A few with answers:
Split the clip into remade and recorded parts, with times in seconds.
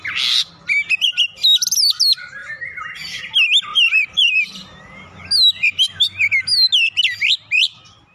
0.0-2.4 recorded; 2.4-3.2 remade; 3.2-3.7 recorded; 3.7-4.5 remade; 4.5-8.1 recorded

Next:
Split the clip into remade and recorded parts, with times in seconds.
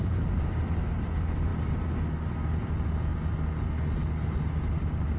0.0-1.5 remade; 1.5-4.6 recorded; 4.6-5.2 remade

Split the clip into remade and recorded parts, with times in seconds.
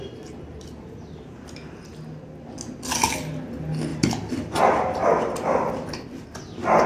0.0-3.9 recorded; 3.9-5.7 remade; 5.7-6.9 recorded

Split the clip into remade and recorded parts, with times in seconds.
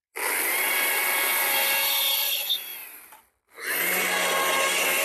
0.0-1.3 remade; 1.3-2.0 recorded; 2.0-2.8 remade; 2.8-5.0 recorded